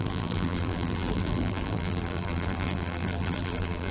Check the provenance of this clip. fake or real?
fake